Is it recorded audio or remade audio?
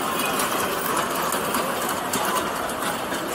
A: recorded